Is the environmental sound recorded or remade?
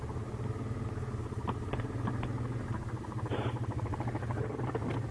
recorded